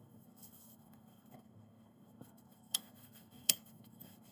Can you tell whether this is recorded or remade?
remade